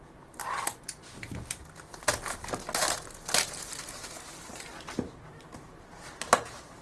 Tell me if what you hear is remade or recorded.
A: recorded